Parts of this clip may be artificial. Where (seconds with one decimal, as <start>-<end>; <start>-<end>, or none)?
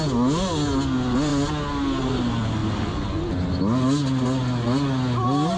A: none